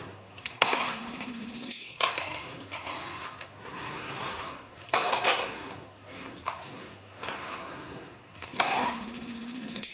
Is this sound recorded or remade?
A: remade